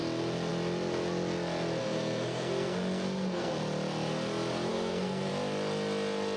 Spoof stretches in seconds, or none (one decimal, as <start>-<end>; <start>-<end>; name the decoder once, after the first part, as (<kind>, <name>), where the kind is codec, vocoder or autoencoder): 1.8-3.5 (codec, SNAC); 4.7-5.3